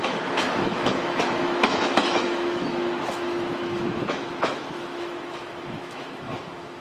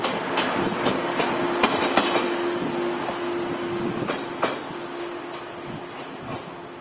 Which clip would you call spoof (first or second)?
first